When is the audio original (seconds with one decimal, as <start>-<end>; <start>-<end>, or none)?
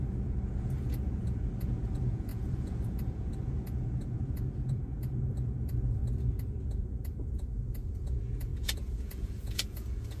6.0-6.6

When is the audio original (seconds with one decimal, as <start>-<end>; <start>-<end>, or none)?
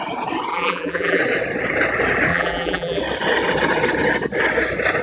0.0-0.5; 1.2-2.3; 3.0-5.0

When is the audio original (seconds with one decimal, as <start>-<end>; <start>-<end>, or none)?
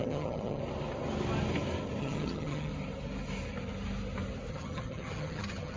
0.6-2.0; 2.7-4.5